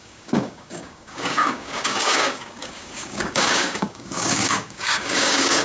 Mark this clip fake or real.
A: fake